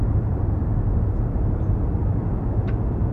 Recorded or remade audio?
recorded